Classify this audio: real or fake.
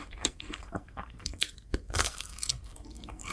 fake